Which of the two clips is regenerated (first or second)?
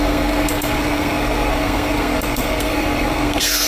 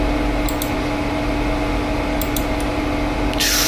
first